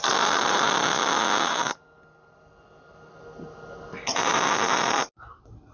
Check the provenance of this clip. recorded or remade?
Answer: recorded